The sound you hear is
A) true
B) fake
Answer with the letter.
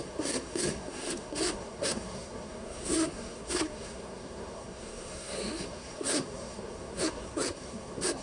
B